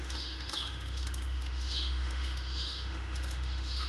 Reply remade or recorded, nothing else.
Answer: remade